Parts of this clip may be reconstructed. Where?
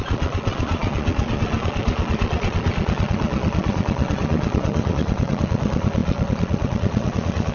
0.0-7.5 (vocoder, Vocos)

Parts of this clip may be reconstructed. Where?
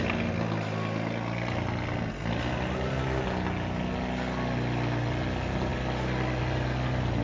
none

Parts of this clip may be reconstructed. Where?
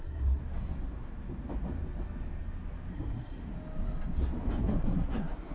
0.0-0.4 (codec, SNAC); 2.9-3.4; 4.6-5.5